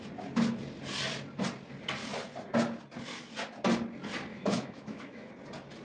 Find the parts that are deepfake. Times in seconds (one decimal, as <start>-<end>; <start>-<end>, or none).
4.3-5.3